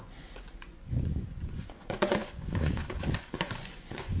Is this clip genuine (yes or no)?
no